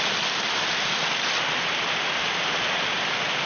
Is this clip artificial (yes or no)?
no